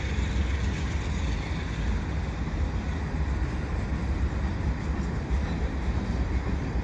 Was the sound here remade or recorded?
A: recorded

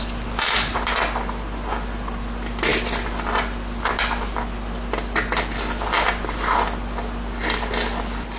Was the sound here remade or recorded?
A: recorded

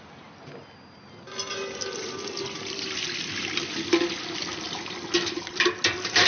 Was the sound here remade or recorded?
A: recorded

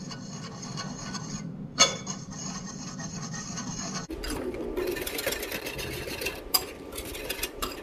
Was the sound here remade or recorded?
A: remade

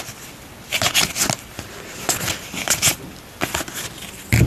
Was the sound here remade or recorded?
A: recorded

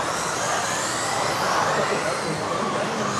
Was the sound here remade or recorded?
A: recorded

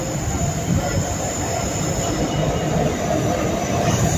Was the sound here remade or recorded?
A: remade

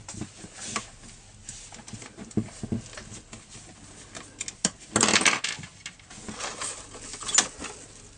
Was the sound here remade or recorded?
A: recorded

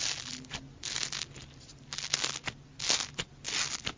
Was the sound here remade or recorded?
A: recorded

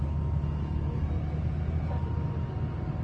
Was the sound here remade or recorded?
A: recorded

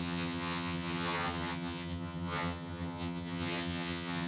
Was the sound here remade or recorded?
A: remade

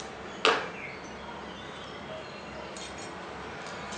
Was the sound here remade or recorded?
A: recorded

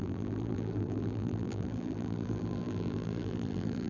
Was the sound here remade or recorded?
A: remade